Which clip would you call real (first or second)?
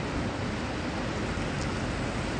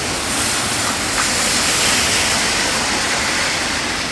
first